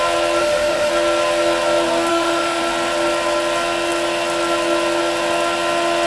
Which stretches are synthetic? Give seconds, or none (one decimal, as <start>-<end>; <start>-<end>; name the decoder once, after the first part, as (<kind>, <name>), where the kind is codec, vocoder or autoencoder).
0.4-0.9 (autoencoder, DAC-VAE); 2.1-2.6